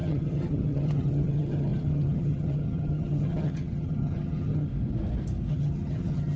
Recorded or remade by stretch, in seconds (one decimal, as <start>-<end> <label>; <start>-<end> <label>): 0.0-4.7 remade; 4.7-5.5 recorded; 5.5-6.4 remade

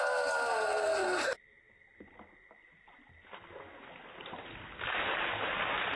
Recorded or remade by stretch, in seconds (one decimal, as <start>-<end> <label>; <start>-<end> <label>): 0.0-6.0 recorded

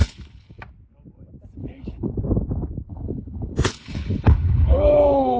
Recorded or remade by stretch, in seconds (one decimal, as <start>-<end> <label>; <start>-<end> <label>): 0.0-0.6 remade; 0.6-1.6 recorded; 1.6-2.1 remade; 2.1-2.9 recorded; 2.9-5.4 remade